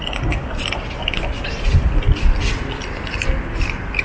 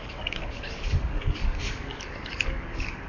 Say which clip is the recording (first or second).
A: first